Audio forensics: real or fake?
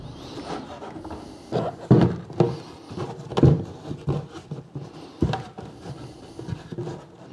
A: real